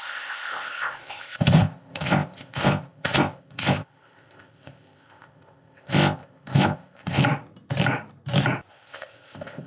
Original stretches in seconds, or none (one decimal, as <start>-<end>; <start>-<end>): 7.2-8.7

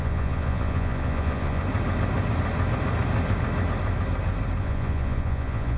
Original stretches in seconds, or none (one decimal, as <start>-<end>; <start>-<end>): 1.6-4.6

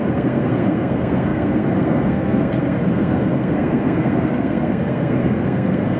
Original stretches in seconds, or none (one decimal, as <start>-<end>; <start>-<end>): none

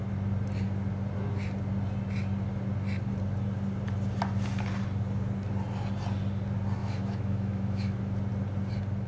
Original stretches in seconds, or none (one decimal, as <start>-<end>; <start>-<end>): 0.0-6.8; 8.0-9.1

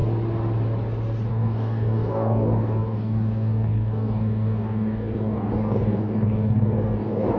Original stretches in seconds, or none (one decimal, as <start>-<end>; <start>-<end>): 0.0-1.3